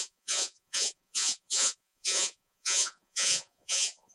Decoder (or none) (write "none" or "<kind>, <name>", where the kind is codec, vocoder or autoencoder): vocoder, Vocos